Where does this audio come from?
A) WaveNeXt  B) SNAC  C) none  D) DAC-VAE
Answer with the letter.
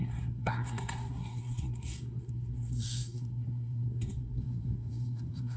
B